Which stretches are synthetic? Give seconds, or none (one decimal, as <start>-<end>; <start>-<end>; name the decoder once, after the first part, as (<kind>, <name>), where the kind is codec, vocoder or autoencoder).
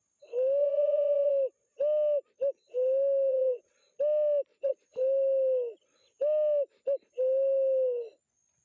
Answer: 0.6-1.3 (vocoder, Vocos); 3.3-4.0; 4.5-5.0